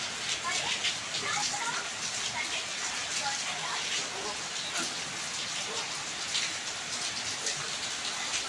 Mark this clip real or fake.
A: real